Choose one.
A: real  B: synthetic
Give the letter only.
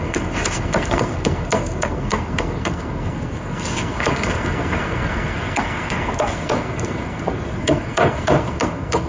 B